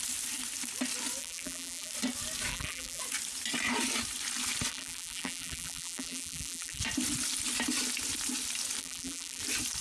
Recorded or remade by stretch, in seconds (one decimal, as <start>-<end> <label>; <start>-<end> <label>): 0.0-1.2 recorded; 1.2-1.9 remade; 1.9-2.5 recorded; 2.5-3.0 remade; 3.0-4.7 recorded; 4.7-6.8 remade; 6.8-8.8 recorded; 8.8-9.4 remade; 9.4-9.8 recorded